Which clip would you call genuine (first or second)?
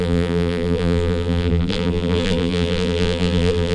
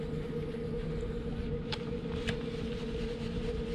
second